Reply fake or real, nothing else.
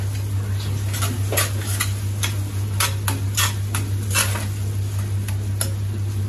real